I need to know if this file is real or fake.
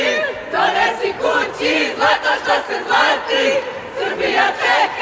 fake